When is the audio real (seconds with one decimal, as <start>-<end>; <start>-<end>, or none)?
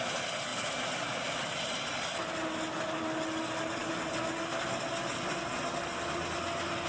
0.0-6.9